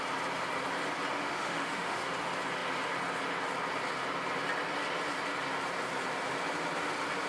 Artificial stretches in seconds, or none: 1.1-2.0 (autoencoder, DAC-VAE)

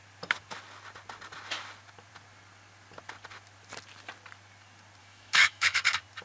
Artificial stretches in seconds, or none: 5.0-5.8 (autoencoder, DAC-VAE)

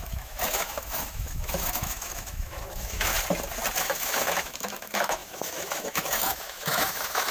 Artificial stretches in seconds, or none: 0.0-3.1 (autoencoder, DAC-VAE); 3.8-7.3